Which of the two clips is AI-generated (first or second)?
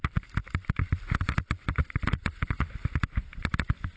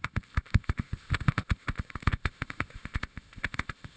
second